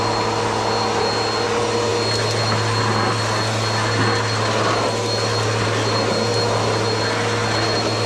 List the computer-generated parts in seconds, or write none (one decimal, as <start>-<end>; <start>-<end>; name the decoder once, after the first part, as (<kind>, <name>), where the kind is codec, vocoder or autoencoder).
none